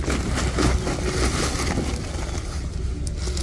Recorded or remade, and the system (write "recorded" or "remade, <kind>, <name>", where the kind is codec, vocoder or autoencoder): recorded